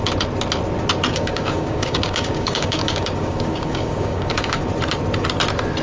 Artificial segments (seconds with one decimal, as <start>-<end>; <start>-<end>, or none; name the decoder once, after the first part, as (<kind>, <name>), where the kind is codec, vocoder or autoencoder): 1.1-4.6 (codec, DAC)